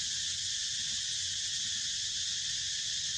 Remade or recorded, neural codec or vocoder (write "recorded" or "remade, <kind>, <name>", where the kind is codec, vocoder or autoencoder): recorded